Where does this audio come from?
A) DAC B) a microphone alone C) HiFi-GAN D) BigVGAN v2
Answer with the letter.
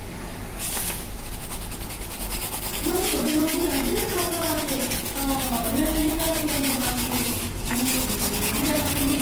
A